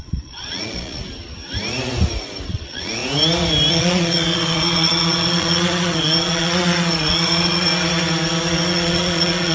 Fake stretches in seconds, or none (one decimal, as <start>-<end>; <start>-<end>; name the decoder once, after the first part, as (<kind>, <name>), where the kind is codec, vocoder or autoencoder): 0.0-1.0 (vocoder, Vocos); 2.5-3.0; 3.7-7.7; 8.7-9.5